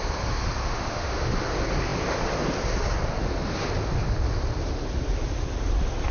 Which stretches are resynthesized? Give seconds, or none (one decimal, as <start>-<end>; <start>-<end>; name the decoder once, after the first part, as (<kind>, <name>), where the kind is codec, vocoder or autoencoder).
0.6-1.2 (autoencoder, DAC-VAE)